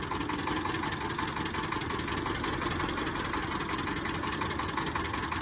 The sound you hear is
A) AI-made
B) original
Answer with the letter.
B